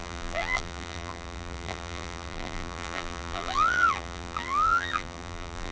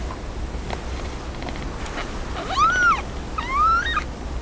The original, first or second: second